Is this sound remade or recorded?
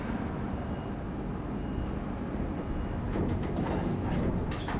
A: recorded